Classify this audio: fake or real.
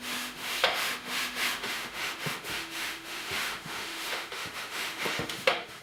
fake